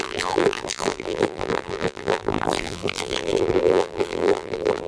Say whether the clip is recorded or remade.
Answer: remade